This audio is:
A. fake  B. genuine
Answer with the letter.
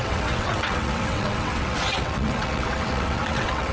A